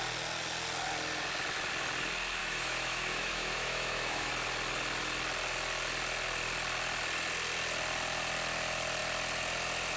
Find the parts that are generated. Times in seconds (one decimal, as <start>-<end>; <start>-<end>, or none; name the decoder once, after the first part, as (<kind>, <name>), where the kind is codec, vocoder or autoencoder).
2.4-4.3 (autoencoder, DAC-VAE)